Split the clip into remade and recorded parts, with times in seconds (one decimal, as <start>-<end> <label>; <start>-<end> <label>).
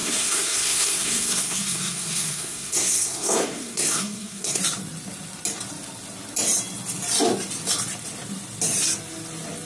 0.0-4.6 remade; 4.6-9.7 recorded